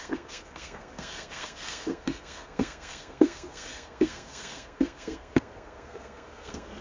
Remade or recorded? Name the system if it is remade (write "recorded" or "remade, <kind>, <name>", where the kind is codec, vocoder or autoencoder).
remade, codec, SNAC